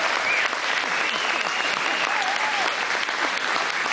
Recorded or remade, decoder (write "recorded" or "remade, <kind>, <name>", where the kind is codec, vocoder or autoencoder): recorded